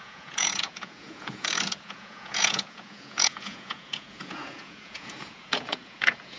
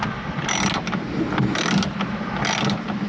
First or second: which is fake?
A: first